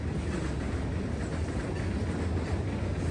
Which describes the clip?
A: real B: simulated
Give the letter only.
A